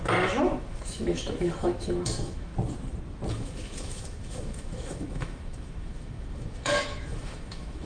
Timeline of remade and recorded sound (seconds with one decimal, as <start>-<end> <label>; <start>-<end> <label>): 0.0-2.5 remade; 2.5-3.3 recorded; 3.3-7.9 remade